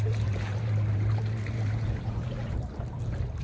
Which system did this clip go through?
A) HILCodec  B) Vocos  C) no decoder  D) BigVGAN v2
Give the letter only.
D